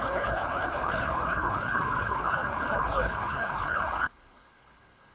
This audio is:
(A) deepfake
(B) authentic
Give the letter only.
A